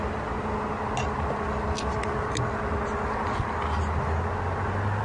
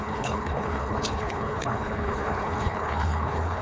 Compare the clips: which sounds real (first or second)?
first